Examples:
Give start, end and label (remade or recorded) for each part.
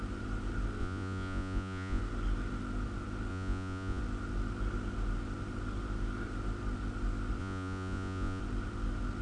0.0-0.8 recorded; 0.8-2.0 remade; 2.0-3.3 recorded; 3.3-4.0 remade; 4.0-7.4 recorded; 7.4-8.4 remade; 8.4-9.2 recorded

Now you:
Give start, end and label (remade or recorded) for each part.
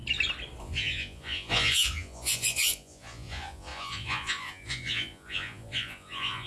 0.0-0.6 recorded; 0.6-6.5 remade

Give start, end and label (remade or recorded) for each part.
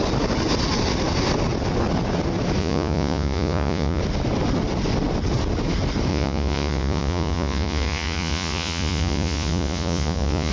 0.0-2.6 recorded; 2.6-4.0 remade; 4.0-6.1 recorded; 6.1-10.5 remade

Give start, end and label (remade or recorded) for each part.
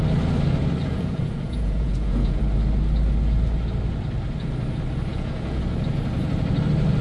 0.0-0.8 recorded; 0.8-2.4 remade; 2.4-5.1 recorded; 5.1-5.6 remade; 5.6-7.0 recorded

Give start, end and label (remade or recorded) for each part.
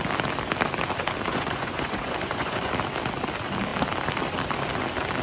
0.0-1.3 recorded; 1.3-2.7 remade; 2.7-5.2 recorded